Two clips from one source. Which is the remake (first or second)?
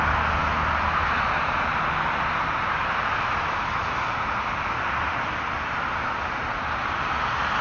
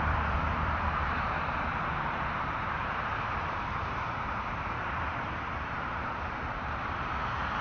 second